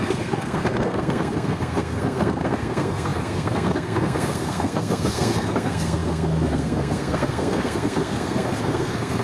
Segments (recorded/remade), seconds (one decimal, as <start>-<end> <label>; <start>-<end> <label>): 0.0-9.2 remade

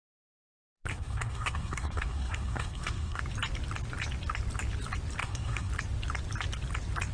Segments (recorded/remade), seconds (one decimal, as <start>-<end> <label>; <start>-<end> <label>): 0.0-0.9 recorded; 0.9-3.2 remade; 3.2-5.2 recorded; 5.2-5.7 remade; 5.7-7.1 recorded

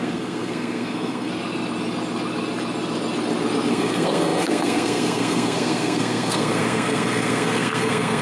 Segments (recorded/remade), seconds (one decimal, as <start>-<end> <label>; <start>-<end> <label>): 0.0-1.3 remade; 1.3-3.7 recorded; 3.7-8.2 remade